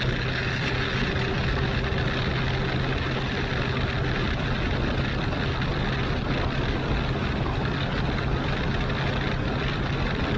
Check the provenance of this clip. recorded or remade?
recorded